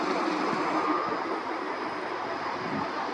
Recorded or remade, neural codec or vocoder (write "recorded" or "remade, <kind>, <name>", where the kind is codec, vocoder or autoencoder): recorded